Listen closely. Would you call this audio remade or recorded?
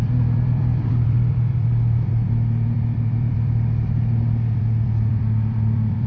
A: remade